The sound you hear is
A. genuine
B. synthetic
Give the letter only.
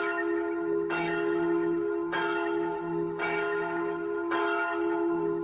B